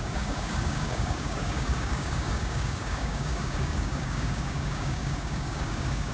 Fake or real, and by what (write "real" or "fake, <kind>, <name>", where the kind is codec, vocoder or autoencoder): fake, codec, DAC